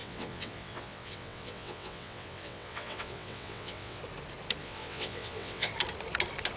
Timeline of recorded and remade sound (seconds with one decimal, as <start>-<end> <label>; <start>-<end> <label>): 0.0-4.0 remade; 4.0-4.6 recorded; 4.6-5.7 remade; 5.7-6.6 recorded